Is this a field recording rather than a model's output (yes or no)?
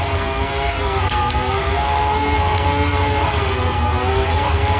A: no